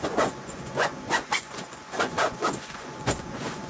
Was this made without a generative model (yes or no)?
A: no